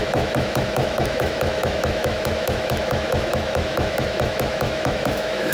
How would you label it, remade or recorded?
remade